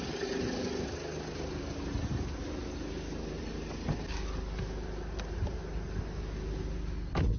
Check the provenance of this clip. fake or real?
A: real